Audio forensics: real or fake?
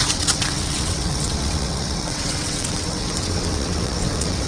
fake